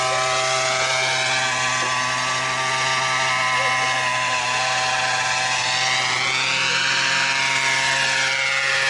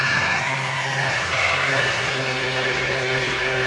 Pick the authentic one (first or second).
first